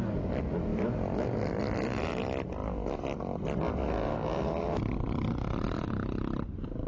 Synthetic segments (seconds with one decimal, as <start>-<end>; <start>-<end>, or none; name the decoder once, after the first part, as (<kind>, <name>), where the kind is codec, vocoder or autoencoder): none